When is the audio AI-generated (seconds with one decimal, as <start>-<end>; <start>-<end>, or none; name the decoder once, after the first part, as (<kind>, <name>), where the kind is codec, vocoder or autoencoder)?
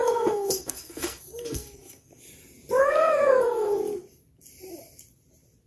0.0-2.2 (codec, SNAC); 2.8-3.8